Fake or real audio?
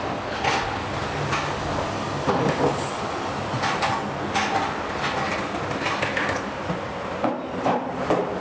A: real